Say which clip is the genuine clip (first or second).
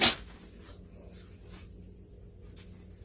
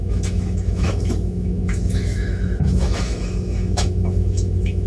first